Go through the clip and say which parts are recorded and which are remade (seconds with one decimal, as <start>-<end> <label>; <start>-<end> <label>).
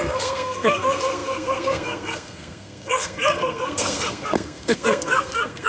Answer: 0.0-5.7 remade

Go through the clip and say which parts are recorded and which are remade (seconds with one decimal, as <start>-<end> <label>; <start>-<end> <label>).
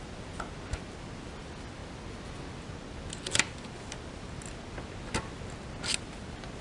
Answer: 0.0-6.6 recorded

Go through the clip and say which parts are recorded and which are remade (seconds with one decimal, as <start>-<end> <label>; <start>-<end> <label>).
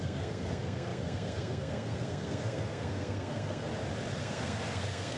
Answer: 0.0-3.7 remade; 3.7-4.2 recorded; 4.2-5.2 remade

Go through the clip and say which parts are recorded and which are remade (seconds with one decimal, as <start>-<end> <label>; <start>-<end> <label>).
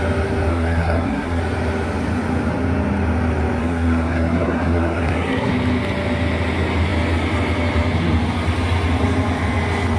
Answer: 0.0-0.5 recorded; 0.5-1.4 remade; 1.4-3.6 recorded; 3.6-5.5 remade; 5.5-10.0 recorded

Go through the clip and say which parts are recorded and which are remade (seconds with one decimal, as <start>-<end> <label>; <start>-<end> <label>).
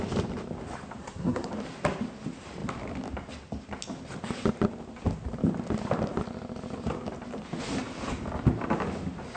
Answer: 0.0-1.0 recorded; 1.0-1.5 remade; 1.5-9.4 recorded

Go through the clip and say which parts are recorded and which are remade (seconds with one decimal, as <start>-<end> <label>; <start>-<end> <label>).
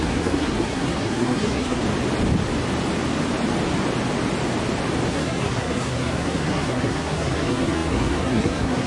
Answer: 0.0-1.8 remade; 1.8-5.1 recorded; 5.1-8.9 remade